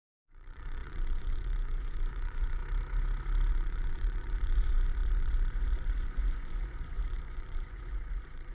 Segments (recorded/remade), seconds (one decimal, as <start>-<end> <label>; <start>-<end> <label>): 0.0-2.6 remade; 2.6-3.5 recorded; 3.5-8.5 remade